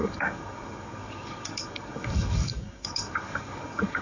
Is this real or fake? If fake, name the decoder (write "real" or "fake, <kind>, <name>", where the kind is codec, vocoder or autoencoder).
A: fake, codec, DAC